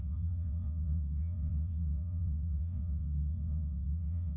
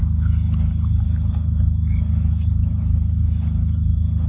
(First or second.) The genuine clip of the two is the second